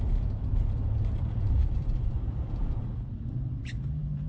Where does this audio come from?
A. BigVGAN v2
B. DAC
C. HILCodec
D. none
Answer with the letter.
A